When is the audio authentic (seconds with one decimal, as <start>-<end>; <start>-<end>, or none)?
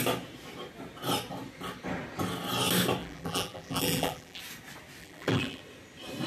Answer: 0.0-3.0; 4.4-5.0; 5.6-6.3